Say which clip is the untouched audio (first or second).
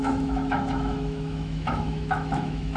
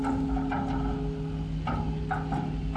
second